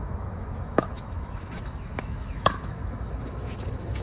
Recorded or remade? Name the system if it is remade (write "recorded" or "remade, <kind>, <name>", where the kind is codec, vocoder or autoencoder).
remade, autoencoder, DAC-VAE